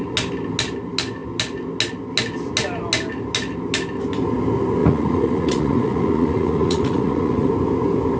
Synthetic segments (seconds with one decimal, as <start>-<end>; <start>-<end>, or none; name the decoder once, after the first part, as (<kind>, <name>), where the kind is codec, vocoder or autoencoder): 4.8-7.5 (vocoder, Vocos)